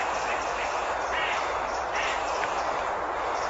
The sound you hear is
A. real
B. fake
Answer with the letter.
B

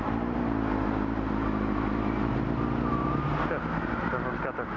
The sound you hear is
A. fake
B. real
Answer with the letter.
B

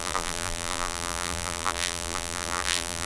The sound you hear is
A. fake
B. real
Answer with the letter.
A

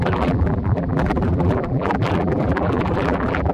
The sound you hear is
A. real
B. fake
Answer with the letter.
B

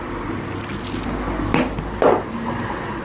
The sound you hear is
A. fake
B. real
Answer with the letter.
B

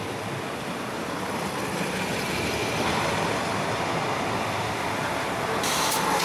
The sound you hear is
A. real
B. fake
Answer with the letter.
A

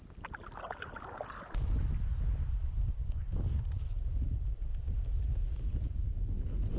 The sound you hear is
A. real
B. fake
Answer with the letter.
A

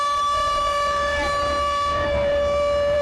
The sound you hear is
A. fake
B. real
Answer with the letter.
A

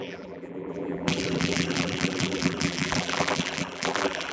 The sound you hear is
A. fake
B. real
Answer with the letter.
A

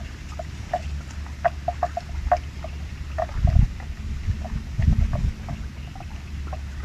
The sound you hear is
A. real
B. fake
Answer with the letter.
A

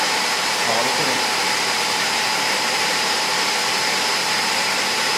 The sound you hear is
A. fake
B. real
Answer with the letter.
A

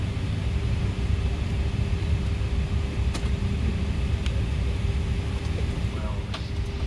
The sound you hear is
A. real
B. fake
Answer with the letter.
A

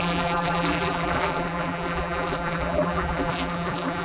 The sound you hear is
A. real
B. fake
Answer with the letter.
B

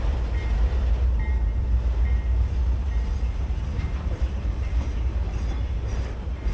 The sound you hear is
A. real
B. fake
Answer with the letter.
B